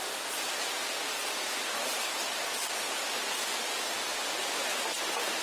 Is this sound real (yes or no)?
yes